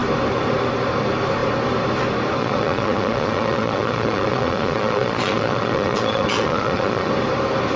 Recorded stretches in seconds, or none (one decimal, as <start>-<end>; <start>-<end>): 0.0-2.4; 7.1-7.8